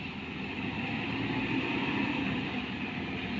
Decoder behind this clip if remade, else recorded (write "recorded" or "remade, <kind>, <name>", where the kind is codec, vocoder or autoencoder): recorded